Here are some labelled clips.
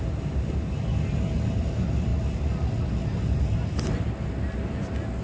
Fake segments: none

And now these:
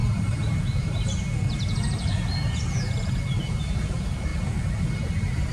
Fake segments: 0.0-4.3

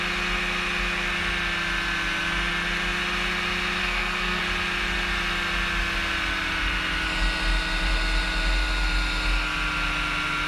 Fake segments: 3.8-4.4